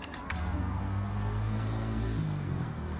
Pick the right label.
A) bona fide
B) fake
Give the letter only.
B